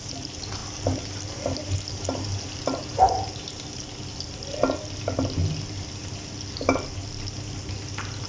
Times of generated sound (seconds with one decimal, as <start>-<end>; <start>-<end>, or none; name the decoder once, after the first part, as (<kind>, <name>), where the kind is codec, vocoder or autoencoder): 2.8-3.8 (vocoder, BigVGAN v2)